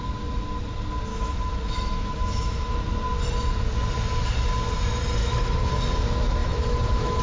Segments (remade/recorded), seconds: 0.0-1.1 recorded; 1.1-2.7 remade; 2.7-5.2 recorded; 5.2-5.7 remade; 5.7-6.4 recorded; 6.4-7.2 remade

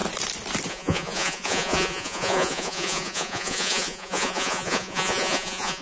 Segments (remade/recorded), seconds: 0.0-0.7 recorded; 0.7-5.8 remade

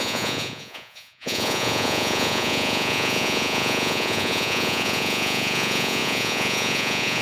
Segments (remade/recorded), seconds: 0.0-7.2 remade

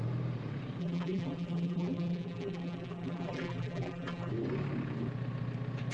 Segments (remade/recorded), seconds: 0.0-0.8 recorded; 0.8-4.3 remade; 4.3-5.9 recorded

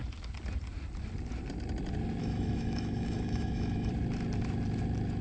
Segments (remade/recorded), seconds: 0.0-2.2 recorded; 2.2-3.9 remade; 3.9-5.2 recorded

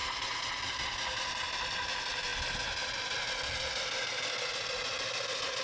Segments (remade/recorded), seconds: 0.0-5.6 recorded

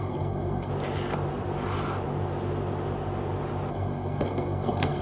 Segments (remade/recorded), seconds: 0.0-0.7 remade; 0.7-3.7 recorded; 3.7-5.0 remade

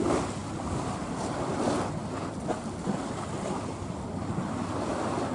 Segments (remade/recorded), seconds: 0.0-0.4 recorded; 0.4-1.4 remade; 1.4-2.0 recorded; 2.0-5.3 remade